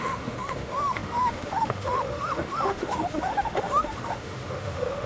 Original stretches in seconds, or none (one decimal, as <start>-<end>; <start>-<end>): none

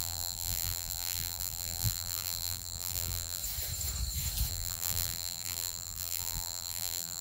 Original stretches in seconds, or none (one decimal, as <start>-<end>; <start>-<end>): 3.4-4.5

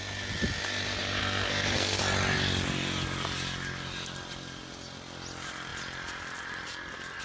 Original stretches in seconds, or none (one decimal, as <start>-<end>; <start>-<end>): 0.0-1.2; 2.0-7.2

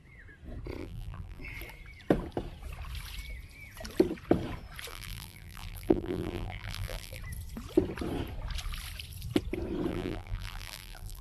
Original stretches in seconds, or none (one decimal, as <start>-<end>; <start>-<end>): 0.0-0.8; 1.4-4.9; 7.2-9.9

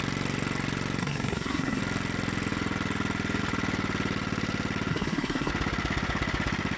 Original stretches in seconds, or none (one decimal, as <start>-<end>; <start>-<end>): 0.0-1.0; 1.8-4.9; 5.5-6.8

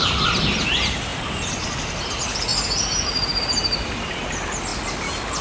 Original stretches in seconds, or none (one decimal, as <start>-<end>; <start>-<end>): 0.0-5.4

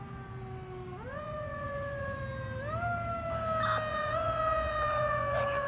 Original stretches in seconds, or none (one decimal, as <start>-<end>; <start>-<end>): 0.0-1.1; 2.2-3.9

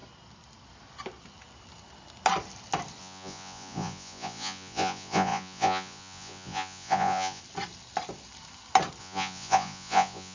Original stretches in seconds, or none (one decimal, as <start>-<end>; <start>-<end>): 0.0-3.0; 7.4-9.0